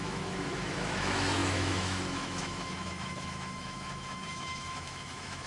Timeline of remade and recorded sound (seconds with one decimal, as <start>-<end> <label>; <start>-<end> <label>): 0.0-5.5 remade